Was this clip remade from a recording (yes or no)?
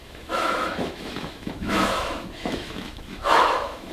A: yes